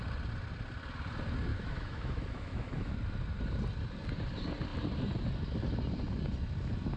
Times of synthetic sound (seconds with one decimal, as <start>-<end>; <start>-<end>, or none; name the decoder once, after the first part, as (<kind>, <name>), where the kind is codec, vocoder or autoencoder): 1.5-2.9 (autoencoder, DAC-VAE)